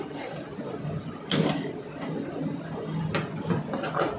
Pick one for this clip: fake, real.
real